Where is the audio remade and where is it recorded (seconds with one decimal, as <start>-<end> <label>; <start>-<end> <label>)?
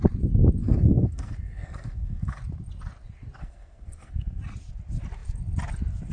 0.0-0.6 recorded; 0.6-2.4 remade; 2.4-3.4 recorded; 3.4-4.4 remade; 4.4-6.1 recorded